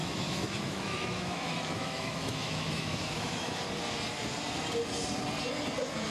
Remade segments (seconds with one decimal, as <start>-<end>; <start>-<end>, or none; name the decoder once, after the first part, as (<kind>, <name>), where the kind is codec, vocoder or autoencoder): 0.0-3.7 (autoencoder, DAC-VAE)